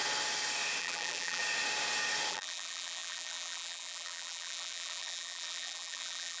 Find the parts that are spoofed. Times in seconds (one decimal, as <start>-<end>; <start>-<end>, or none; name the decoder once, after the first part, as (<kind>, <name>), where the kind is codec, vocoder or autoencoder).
0.8-1.4 (vocoder, BigVGAN v2); 2.3-6.4